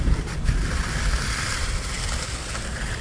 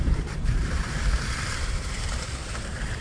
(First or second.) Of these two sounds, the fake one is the second